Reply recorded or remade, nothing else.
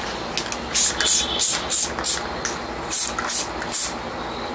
recorded